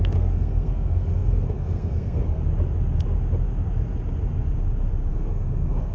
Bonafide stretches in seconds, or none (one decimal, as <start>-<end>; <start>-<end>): 2.4-5.1